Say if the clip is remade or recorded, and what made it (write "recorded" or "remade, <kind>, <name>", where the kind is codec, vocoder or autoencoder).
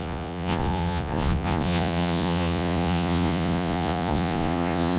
remade, vocoder, Vocos